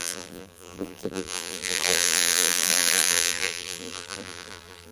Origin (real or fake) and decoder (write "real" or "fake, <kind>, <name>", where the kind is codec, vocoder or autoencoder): fake, vocoder, BigVGAN v2